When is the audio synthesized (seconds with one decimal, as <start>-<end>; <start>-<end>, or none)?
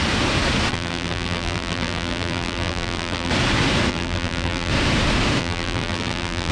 0.7-3.3; 3.9-4.7; 5.4-6.5